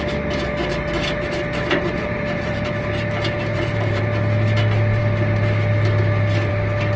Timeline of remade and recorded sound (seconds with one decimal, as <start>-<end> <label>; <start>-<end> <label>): 0.0-2.0 recorded; 2.0-2.7 remade; 2.7-3.5 recorded; 3.5-4.0 remade; 4.0-7.0 recorded